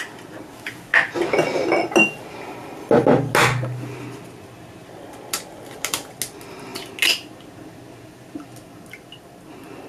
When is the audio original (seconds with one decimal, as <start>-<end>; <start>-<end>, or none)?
0.0-9.9